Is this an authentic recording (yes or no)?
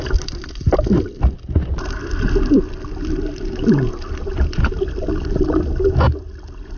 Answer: yes